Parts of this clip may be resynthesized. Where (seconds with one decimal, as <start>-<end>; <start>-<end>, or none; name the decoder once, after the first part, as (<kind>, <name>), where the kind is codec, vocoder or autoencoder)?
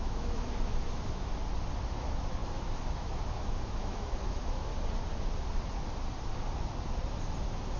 0.0-1.3 (autoencoder, DAC-VAE); 1.9-4.7